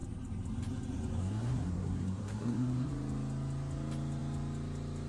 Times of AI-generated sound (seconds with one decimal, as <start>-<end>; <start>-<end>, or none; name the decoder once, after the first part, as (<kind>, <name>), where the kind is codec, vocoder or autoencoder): 1.2-2.9 (codec, SNAC)